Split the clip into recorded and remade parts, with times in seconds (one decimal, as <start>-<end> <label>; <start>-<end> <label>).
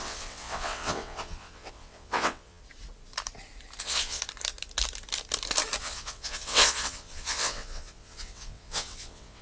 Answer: 0.0-2.6 remade; 2.6-3.8 recorded; 3.8-4.2 remade; 4.2-5.8 recorded; 5.8-9.4 remade